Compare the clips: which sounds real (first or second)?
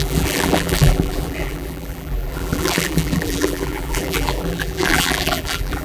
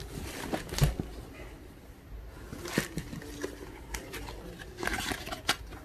second